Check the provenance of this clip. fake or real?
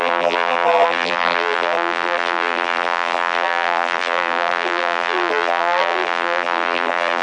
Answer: fake